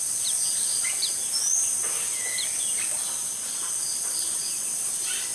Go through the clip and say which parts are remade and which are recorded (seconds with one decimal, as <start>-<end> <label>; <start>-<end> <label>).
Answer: 0.0-0.7 recorded; 0.7-1.4 remade; 1.4-5.3 recorded